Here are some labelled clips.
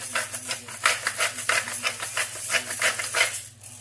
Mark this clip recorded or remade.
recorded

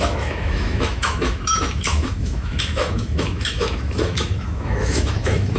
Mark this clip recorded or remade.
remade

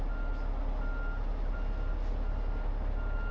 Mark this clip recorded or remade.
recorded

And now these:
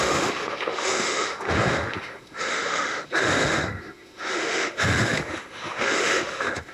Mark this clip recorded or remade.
remade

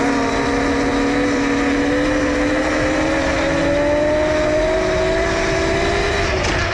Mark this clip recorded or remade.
recorded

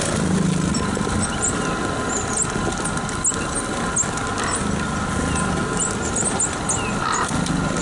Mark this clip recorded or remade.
recorded